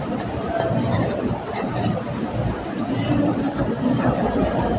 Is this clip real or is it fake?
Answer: fake